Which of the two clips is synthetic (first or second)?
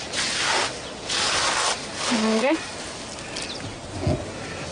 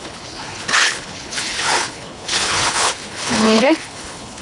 second